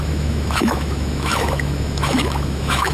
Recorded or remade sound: remade